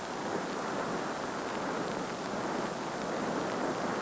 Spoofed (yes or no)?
no